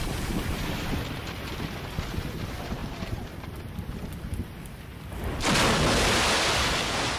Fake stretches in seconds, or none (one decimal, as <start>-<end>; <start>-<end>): 2.8-4.1